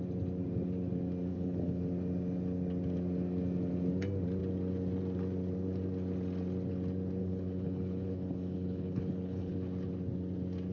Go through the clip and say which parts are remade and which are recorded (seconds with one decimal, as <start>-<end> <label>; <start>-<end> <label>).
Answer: 0.0-1.3 recorded; 1.3-1.8 remade; 1.8-7.2 recorded; 7.2-9.5 remade; 9.5-10.7 recorded